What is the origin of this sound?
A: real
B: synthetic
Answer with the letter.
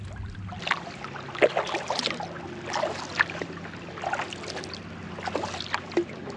A